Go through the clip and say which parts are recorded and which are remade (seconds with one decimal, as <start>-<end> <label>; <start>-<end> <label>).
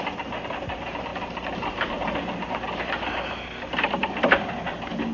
0.0-5.1 recorded